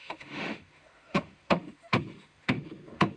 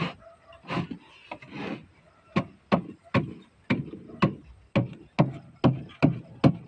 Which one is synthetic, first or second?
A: first